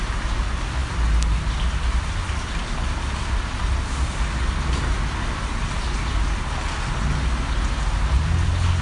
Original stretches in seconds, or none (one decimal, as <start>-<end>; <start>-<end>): 0.0-8.8